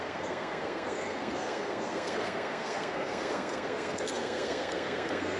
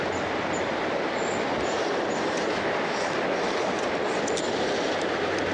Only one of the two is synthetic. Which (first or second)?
first